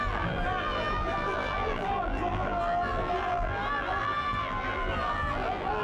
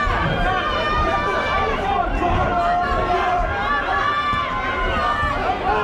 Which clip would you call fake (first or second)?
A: first